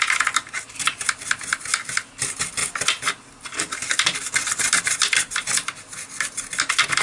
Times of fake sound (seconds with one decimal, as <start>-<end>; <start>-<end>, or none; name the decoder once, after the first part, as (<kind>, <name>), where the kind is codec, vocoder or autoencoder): none